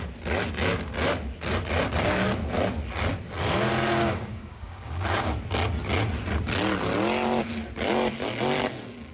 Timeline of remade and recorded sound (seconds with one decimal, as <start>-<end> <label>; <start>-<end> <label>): 0.0-4.0 recorded; 4.0-5.3 remade; 5.3-9.1 recorded